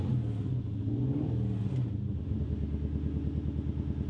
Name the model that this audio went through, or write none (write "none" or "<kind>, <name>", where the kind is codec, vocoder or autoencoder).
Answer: none